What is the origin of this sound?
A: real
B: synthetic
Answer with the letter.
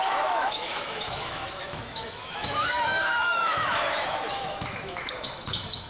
B